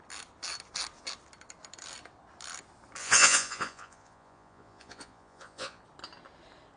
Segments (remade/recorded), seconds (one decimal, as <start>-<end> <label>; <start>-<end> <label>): 0.0-3.0 recorded; 3.0-5.8 remade; 5.8-6.8 recorded